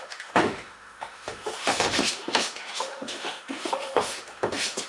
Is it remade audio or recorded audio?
remade